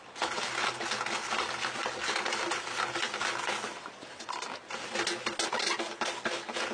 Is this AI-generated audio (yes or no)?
no